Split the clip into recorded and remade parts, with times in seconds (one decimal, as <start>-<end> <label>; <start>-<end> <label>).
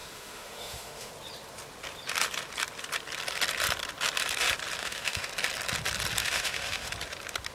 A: 0.0-1.1 remade; 1.1-4.8 recorded; 4.8-5.3 remade; 5.3-6.2 recorded; 6.2-6.9 remade; 6.9-7.5 recorded